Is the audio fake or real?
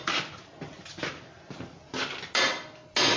real